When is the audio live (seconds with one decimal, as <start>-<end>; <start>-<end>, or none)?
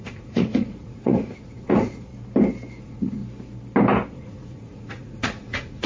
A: 2.1-2.8; 3.2-4.1